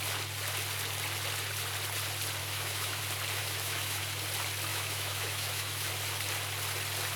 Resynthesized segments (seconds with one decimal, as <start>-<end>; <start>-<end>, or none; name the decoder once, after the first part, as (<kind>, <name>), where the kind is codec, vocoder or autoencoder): 2.4-3.0 (autoencoder, DAC-VAE); 3.4-4.0; 4.7-5.9